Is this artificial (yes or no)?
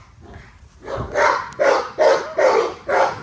no